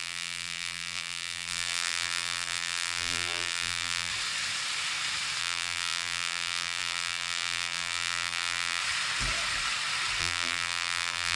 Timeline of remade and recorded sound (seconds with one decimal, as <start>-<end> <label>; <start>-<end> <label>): 0.0-4.1 remade; 4.1-5.4 recorded; 5.4-8.8 remade; 8.8-10.2 recorded; 10.2-11.4 remade